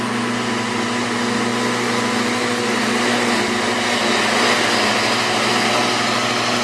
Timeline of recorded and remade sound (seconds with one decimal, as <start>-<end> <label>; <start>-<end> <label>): 0.0-6.6 recorded